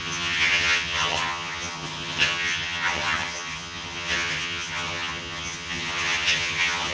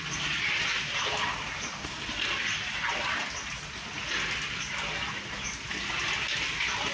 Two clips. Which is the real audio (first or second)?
second